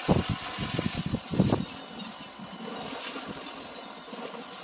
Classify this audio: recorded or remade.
recorded